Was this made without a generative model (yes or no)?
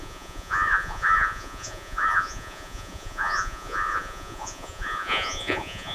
no